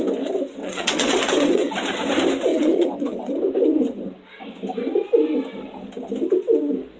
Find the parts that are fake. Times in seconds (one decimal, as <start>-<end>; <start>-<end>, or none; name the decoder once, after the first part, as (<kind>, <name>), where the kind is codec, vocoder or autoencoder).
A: 0.6-1.7 (vocoder, WaveNeXt); 2.5-3.3